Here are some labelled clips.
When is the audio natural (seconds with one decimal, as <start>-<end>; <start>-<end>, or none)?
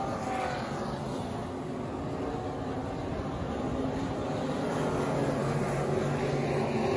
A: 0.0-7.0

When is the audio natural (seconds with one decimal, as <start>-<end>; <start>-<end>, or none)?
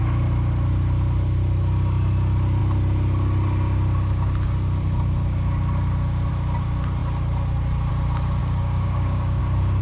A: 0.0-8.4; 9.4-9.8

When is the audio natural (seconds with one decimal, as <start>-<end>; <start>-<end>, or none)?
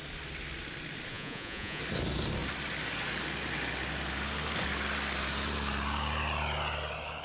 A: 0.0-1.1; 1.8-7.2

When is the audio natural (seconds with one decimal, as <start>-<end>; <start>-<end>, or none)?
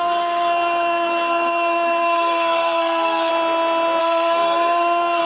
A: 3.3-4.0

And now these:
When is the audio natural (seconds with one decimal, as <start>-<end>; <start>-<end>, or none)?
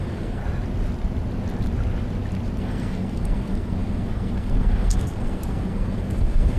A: 0.4-2.6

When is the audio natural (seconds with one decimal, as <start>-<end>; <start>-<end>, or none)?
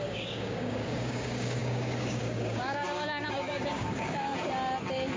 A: 4.3-5.2